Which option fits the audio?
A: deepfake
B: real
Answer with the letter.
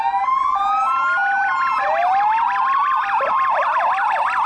B